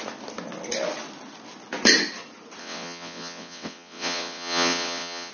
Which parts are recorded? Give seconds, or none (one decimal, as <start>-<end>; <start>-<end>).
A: 0.0-2.6